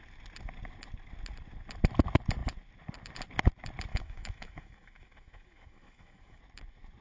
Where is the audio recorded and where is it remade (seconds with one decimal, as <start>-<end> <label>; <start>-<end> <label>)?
0.0-3.9 recorded; 3.9-6.4 remade; 6.4-7.0 recorded

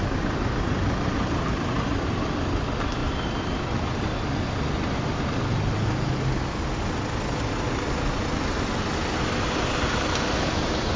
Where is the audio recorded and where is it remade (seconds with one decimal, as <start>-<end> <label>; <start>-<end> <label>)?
0.0-11.0 recorded

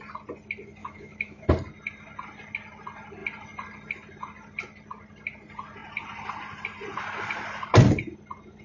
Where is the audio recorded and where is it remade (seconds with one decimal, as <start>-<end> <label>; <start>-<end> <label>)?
0.0-0.8 recorded; 0.8-1.5 remade; 1.5-8.6 recorded

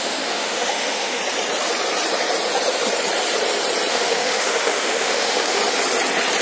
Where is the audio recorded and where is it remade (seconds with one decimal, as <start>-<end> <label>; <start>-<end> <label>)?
0.0-1.2 remade; 1.2-3.9 recorded; 3.9-5.6 remade; 5.6-6.4 recorded

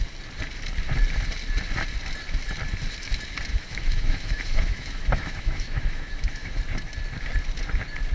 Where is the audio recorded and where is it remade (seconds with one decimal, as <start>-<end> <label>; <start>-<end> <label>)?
0.0-3.5 recorded; 3.5-6.6 remade; 6.6-8.1 recorded

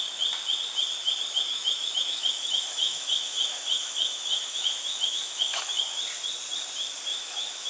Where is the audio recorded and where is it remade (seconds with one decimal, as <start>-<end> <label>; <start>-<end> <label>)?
0.0-1.5 recorded; 1.5-5.8 remade; 5.8-7.1 recorded; 7.1-7.7 remade

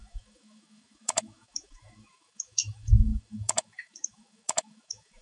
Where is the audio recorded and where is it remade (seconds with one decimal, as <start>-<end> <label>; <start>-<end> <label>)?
0.0-5.2 remade